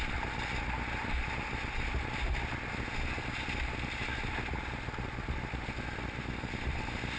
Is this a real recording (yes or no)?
yes